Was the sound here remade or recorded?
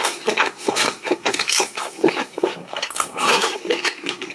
remade